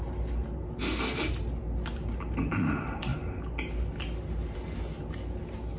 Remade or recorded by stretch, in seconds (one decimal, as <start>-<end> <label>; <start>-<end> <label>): 0.0-5.8 recorded